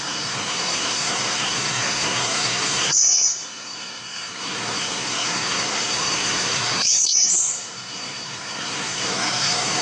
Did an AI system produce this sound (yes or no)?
yes